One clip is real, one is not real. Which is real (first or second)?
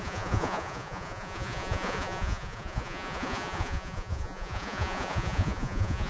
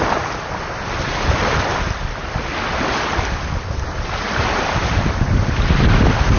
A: second